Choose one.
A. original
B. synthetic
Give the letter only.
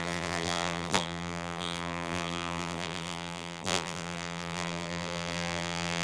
B